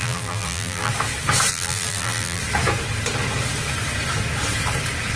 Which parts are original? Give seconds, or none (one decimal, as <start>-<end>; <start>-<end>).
0.9-1.5; 2.4-5.2